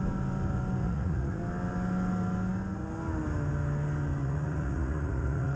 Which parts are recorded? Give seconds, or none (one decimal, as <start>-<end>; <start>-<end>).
0.0-0.8; 1.4-4.2

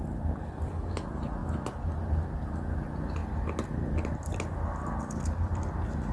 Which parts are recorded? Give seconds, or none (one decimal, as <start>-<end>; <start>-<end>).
0.0-6.1

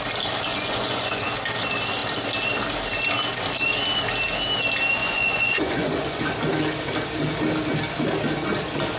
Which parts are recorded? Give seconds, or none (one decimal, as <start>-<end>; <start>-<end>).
0.0-0.5; 1.2-5.0; 6.3-9.0

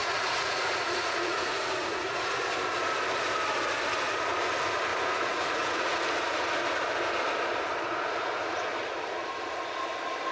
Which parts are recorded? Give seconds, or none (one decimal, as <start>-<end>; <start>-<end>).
2.4-4.9; 6.0-7.9; 8.6-10.3

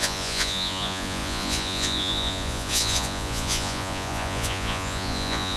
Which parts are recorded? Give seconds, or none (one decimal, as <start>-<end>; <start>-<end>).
none

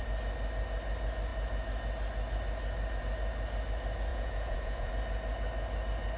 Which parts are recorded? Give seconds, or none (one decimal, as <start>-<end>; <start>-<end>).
0.0-4.1; 4.9-6.2